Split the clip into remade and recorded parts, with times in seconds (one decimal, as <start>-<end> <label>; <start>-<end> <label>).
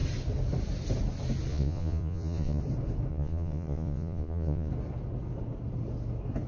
0.0-1.5 recorded; 1.5-2.6 remade; 2.6-3.1 recorded; 3.1-4.7 remade; 4.7-6.5 recorded